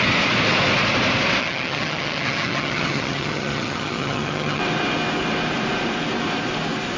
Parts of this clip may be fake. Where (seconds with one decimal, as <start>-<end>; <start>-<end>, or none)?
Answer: 1.4-4.6